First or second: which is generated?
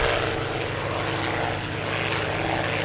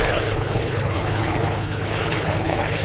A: second